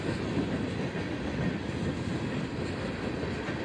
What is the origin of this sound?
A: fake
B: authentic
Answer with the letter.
B